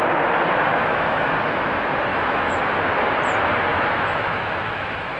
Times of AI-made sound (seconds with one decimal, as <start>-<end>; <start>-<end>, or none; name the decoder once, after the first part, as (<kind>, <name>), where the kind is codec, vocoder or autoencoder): 0.7-1.3 (autoencoder, DAC-VAE); 2.1-2.8; 3.7-5.2